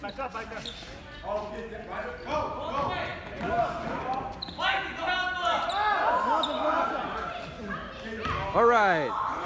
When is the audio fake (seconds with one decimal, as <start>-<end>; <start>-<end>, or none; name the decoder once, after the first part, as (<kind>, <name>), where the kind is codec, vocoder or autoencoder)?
none